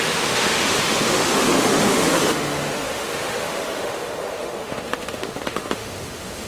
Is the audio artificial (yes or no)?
yes